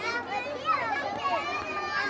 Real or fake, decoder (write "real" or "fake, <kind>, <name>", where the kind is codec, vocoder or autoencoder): real